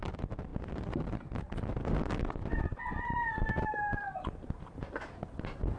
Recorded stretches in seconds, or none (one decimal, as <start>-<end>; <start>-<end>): none